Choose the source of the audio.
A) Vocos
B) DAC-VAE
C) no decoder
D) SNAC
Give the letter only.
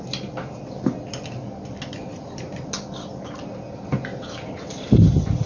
C